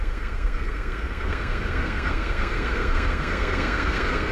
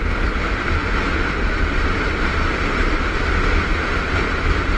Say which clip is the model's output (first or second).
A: first